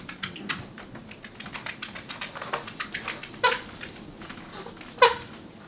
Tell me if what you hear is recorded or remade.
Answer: recorded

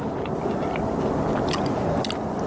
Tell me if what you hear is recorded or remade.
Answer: recorded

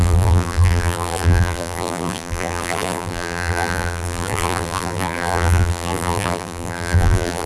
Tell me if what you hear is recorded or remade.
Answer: remade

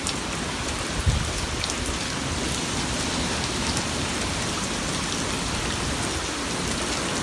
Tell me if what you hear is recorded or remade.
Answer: recorded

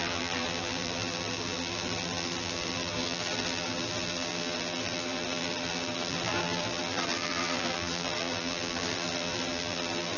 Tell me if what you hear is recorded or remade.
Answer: remade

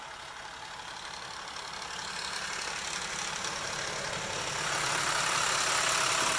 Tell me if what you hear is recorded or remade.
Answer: recorded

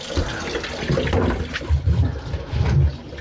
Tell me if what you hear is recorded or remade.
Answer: recorded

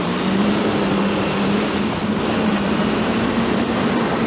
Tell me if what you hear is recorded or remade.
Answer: remade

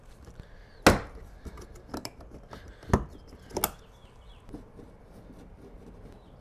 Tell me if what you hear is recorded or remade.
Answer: recorded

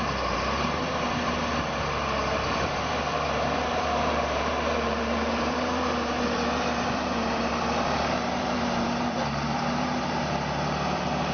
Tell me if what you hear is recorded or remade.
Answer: remade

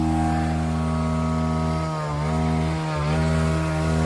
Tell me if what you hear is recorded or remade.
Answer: recorded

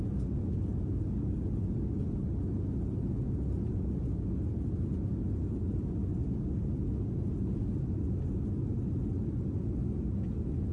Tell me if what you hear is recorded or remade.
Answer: recorded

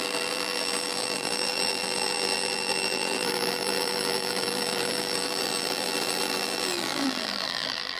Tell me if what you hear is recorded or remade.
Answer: remade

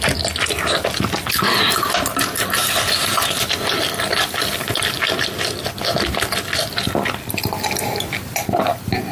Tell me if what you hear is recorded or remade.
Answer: recorded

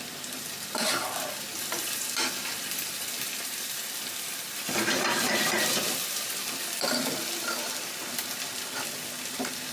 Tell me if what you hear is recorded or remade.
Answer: remade